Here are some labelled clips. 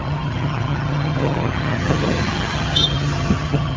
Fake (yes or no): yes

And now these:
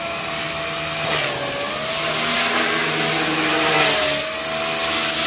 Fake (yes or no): no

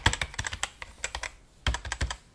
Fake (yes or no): no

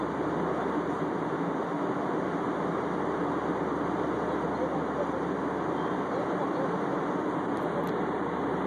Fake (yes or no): no